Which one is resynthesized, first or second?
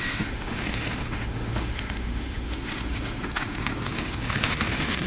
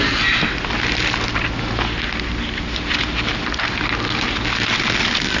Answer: first